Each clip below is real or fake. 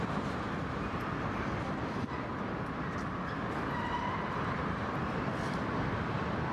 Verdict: real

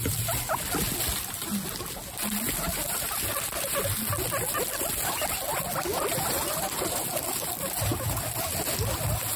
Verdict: real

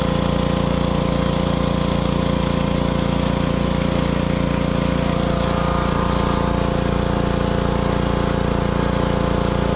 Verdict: real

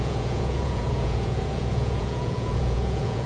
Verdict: fake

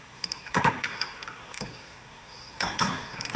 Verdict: fake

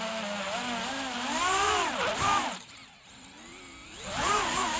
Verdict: real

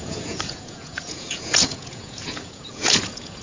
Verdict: fake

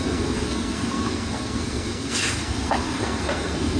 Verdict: fake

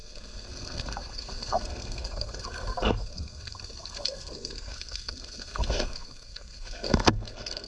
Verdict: fake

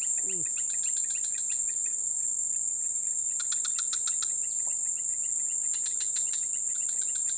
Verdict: real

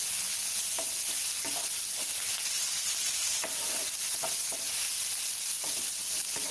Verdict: real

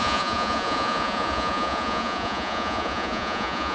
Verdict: fake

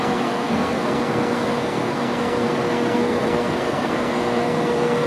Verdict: fake